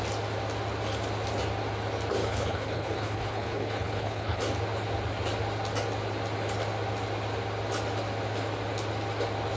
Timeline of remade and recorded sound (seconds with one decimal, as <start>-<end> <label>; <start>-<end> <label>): 0.0-2.2 recorded; 2.2-4.4 remade; 4.4-9.6 recorded